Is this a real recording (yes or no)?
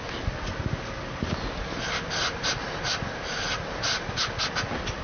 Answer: yes